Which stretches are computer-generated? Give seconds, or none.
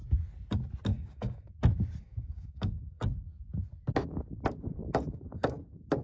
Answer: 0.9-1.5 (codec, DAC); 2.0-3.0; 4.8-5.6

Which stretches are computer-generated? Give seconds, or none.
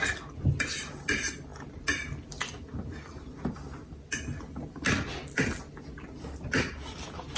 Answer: none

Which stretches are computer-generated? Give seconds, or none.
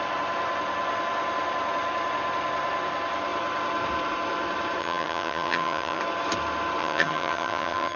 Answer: 4.8-6.0 (vocoder, HiFi-GAN); 6.8-8.0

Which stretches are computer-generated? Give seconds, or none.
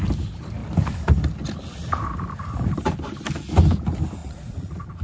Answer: 4.2-5.0 (vocoder, Vocos)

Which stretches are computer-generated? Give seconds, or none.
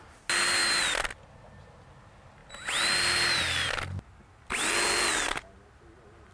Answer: none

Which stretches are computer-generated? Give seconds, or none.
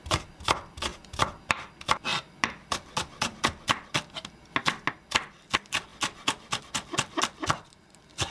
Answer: 0.9-1.7 (vocoder, BigVGAN v2)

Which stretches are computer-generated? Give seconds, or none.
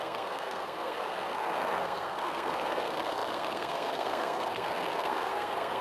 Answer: 0.0-5.8 (codec, SNAC)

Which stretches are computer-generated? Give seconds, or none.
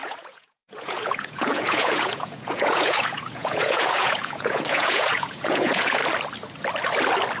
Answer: 0.0-6.0 (vocoder, Vocos)